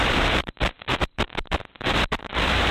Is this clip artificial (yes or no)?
yes